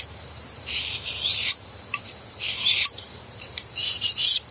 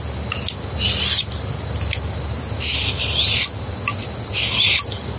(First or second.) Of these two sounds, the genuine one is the second